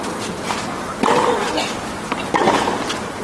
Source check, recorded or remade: recorded